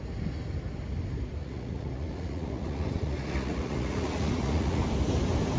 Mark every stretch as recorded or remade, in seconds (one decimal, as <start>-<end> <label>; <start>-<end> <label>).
0.0-1.4 recorded; 1.4-4.8 remade; 4.8-5.6 recorded